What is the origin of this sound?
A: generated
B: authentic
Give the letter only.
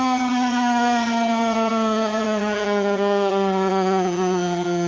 A